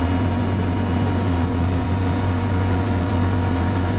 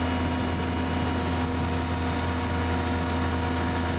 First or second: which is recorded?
second